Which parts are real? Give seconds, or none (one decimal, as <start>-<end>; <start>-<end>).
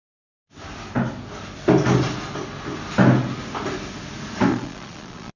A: 0.0-4.5